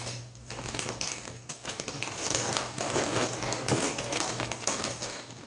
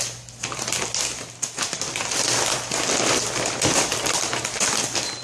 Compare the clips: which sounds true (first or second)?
second